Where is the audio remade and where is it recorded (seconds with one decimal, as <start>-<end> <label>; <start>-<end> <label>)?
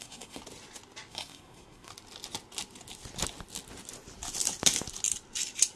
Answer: 0.0-0.4 remade; 0.4-1.1 recorded; 1.1-1.9 remade; 1.9-5.8 recorded